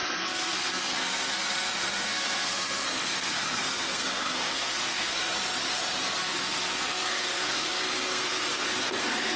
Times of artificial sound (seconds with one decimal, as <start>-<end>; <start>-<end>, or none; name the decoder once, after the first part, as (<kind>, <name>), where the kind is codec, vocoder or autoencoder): 0.0-5.1 (codec, SNAC); 6.2-9.4